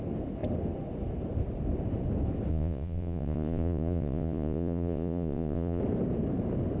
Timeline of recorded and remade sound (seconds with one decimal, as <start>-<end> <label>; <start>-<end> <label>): 0.0-2.5 recorded; 2.5-5.8 remade; 5.8-6.8 recorded